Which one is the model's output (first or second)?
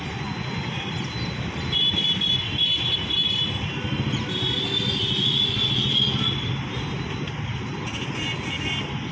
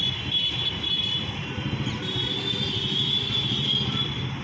second